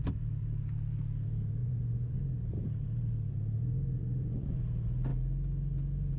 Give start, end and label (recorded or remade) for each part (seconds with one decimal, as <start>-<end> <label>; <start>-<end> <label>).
0.0-1.6 recorded; 1.6-2.2 remade; 2.2-4.0 recorded; 4.0-4.6 remade; 4.6-6.2 recorded